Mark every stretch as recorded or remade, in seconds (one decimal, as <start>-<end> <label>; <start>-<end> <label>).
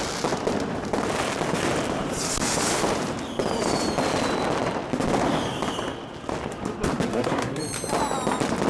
0.0-7.1 recorded; 7.1-7.6 remade; 7.6-8.7 recorded